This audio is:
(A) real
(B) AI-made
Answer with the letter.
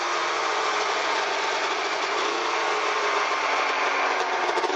B